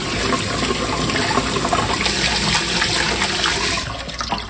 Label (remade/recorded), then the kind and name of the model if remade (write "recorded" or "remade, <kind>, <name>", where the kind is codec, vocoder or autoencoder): recorded